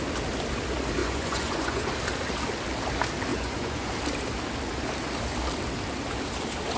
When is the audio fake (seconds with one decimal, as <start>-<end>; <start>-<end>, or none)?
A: 1.0-1.9; 3.3-3.9